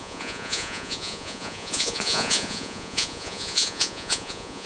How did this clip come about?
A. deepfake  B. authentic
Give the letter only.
A